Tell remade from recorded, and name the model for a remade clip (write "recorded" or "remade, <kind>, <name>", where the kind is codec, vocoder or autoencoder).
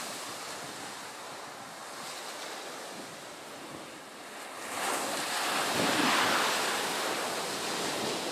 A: recorded